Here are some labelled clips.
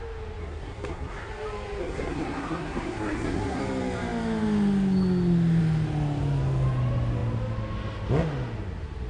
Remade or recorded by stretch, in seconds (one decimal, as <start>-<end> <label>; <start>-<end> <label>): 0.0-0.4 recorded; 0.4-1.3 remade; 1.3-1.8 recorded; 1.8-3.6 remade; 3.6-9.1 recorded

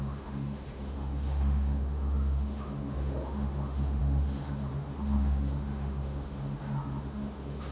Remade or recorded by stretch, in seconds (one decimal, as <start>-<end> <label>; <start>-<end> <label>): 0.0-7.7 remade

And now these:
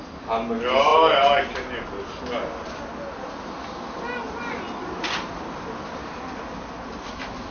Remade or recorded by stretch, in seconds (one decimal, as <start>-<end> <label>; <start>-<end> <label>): 0.0-7.5 recorded